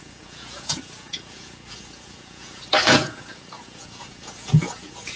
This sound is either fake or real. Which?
fake